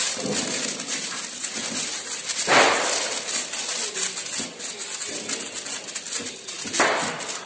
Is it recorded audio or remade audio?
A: recorded